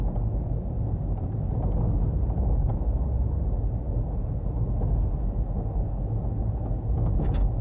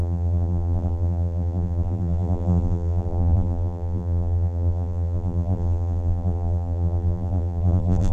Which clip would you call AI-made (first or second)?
second